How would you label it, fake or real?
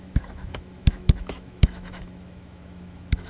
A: fake